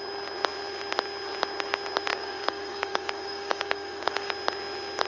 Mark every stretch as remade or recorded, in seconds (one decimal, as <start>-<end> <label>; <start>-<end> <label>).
0.0-2.1 recorded; 2.1-4.3 remade; 4.3-5.1 recorded